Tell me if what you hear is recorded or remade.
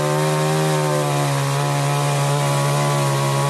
recorded